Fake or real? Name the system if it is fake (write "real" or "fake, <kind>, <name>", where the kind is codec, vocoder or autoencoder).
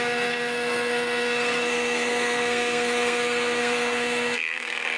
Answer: fake, codec, SNAC